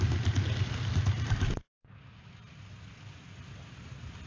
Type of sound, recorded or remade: recorded